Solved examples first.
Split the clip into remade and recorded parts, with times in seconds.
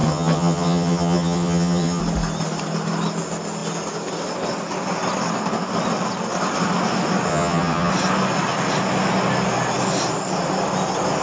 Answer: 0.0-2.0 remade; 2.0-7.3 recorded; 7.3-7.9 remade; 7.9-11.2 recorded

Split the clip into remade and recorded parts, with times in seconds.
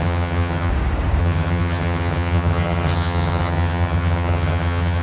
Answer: 0.0-0.7 remade; 0.7-1.2 recorded; 1.2-5.0 remade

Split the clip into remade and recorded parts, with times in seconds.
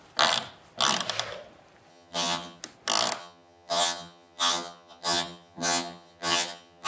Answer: 0.0-1.9 recorded; 1.9-2.6 remade; 2.6-3.2 recorded; 3.2-6.9 remade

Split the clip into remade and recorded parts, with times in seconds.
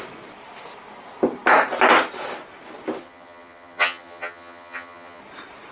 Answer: 0.0-3.0 recorded; 3.0-5.2 remade; 5.2-5.7 recorded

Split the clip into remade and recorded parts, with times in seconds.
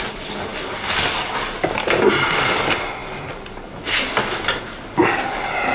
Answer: 0.0-5.7 recorded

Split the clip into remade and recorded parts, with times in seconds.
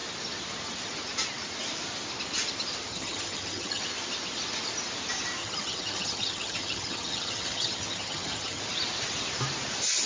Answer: 0.0-2.9 recorded; 2.9-3.8 remade; 3.8-5.4 recorded; 5.4-8.6 remade; 8.6-10.1 recorded